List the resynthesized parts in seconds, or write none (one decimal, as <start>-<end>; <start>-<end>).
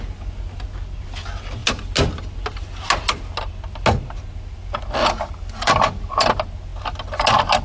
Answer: 5.0-6.2